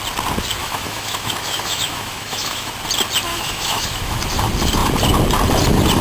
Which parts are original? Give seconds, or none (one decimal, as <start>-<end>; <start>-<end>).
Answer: 0.0-0.6; 2.7-3.3; 4.2-6.0